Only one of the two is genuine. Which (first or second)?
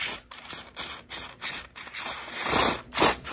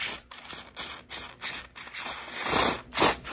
second